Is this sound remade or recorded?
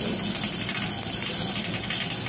recorded